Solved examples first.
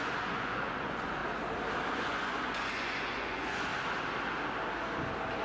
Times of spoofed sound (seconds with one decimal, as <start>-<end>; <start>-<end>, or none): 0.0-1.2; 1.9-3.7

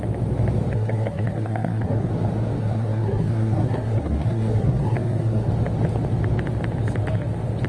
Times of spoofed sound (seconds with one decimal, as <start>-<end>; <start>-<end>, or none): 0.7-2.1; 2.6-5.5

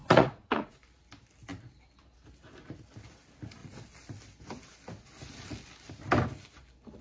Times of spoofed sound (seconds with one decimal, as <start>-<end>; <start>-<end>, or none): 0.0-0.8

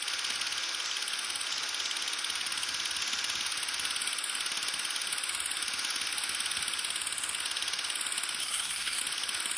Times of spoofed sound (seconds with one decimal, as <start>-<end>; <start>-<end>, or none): 8.4-9.0

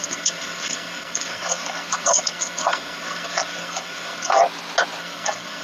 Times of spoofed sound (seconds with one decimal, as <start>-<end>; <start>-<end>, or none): 0.0-4.4; 5.0-5.6